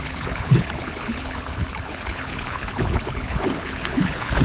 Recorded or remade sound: remade